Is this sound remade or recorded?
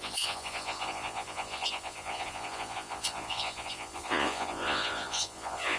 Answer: remade